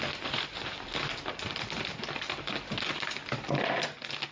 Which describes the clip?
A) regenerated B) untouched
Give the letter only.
B